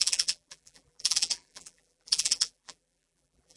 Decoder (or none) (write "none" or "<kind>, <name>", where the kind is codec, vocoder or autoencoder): vocoder, BigVGAN v2